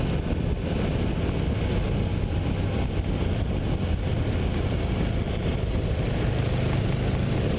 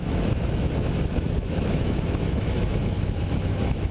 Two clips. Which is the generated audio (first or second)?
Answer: second